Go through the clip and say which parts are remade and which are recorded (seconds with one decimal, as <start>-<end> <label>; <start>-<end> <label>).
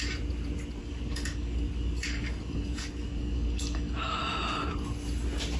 0.0-0.8 recorded; 0.8-4.2 remade; 4.2-5.6 recorded